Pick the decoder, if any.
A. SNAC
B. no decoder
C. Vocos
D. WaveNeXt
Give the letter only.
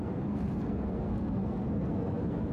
A